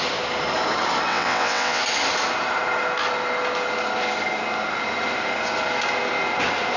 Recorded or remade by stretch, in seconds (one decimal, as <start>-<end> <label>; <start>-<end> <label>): 0.0-1.1 recorded; 1.1-1.8 remade; 1.8-6.8 recorded